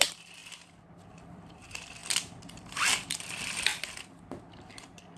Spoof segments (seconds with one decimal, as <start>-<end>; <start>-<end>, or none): 0.0-0.4; 1.0-2.0; 2.5-3.7; 4.5-5.2